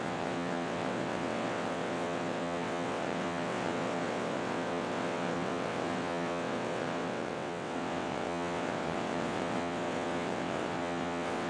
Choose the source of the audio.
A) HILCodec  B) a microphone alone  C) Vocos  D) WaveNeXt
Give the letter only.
D